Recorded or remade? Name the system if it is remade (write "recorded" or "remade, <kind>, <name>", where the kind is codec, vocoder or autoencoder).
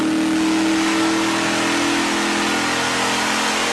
recorded